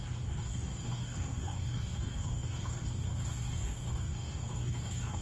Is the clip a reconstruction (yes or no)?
yes